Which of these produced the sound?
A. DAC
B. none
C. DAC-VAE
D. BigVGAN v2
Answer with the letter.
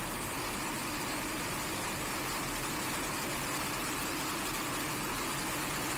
B